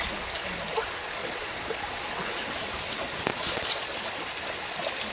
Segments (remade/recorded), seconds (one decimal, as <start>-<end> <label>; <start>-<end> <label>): 0.0-1.2 recorded; 1.2-1.8 remade; 1.8-3.3 recorded; 3.3-4.0 remade; 4.0-5.1 recorded